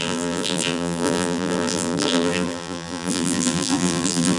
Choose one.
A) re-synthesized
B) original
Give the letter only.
A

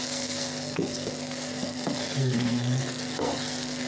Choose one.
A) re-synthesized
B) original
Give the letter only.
A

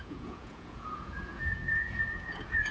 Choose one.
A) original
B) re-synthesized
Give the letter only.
B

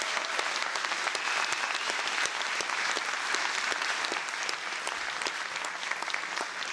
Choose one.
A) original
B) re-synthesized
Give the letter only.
A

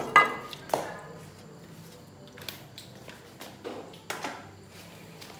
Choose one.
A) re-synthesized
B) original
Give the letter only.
B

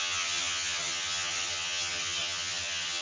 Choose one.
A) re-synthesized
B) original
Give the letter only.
A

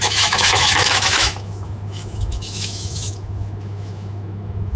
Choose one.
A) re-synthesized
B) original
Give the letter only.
A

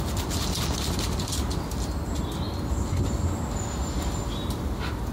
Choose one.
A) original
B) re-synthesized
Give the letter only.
A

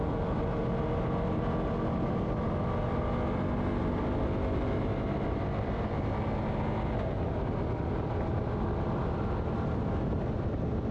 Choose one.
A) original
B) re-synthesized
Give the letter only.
A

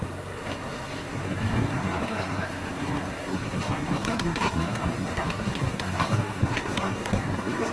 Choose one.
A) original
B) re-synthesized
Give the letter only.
B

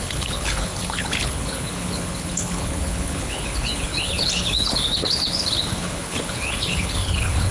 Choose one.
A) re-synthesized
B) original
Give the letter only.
A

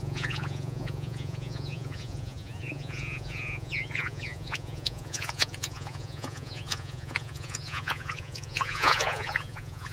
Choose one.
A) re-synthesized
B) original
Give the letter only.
A